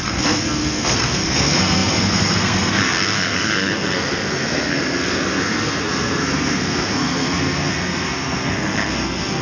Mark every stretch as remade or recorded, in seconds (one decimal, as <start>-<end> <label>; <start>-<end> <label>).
0.0-9.4 remade